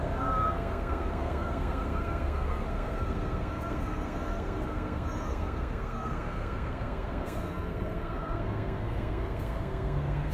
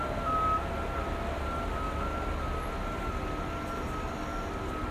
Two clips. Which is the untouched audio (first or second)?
second